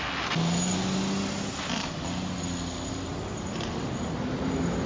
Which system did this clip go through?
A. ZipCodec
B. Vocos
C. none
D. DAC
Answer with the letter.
C